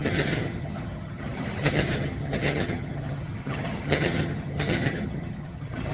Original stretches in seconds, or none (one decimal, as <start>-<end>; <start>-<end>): none